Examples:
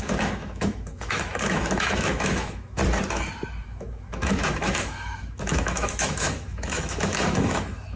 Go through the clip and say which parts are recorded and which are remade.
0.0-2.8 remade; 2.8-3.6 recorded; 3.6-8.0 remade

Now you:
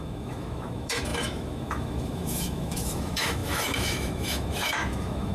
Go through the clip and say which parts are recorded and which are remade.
0.0-5.3 remade

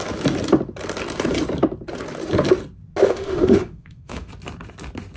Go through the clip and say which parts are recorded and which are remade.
0.0-3.0 recorded; 3.0-4.3 remade; 4.3-5.2 recorded

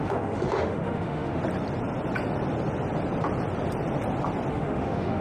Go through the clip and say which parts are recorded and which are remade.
0.0-1.4 remade; 1.4-4.5 recorded; 4.5-5.2 remade

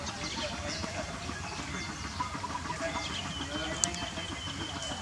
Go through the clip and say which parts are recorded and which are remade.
0.0-5.0 recorded

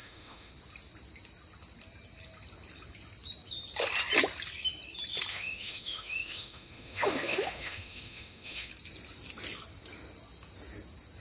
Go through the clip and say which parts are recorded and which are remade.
0.0-0.5 remade; 0.5-5.3 recorded; 5.3-8.7 remade; 8.7-11.2 recorded